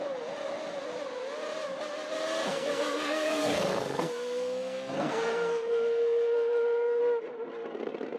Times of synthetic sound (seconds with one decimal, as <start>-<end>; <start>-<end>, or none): 2.4-7.0